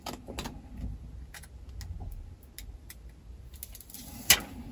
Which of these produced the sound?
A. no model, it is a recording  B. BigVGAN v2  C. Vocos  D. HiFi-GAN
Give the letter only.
A